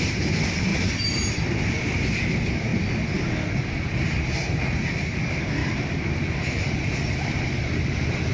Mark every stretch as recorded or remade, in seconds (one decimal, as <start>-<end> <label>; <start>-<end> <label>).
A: 0.0-5.6 recorded; 5.6-8.3 remade